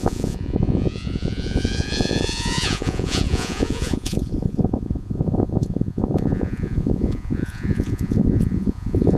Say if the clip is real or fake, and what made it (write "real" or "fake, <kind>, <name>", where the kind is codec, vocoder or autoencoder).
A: fake, vocoder, Vocos